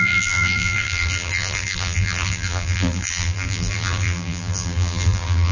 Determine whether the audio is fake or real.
fake